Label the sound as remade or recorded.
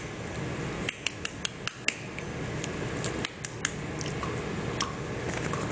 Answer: recorded